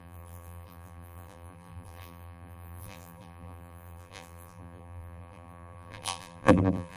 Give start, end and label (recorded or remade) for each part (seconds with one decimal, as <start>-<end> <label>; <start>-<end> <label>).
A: 0.0-7.0 remade

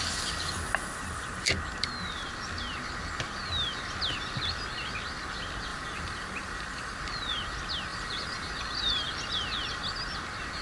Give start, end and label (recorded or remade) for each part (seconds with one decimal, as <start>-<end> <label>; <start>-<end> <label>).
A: 0.0-5.7 recorded; 5.7-7.0 remade; 7.0-7.9 recorded; 7.9-8.5 remade; 8.5-10.6 recorded

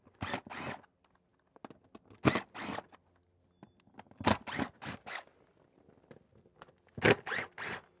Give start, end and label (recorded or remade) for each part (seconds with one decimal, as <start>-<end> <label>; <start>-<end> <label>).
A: 0.0-8.0 recorded

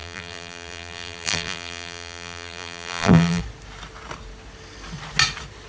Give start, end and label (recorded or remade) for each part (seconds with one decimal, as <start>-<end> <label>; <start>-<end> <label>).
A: 0.0-3.4 remade; 3.4-5.7 recorded